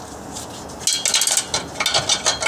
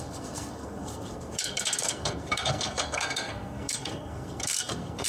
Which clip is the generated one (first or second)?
second